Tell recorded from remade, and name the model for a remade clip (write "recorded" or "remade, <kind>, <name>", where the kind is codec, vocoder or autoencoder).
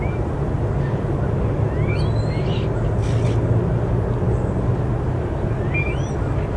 recorded